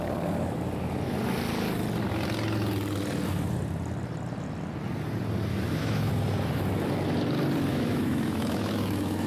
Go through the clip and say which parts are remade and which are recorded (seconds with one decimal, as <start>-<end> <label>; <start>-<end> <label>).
0.0-5.5 recorded; 5.5-6.1 remade; 6.1-7.7 recorded; 7.7-9.3 remade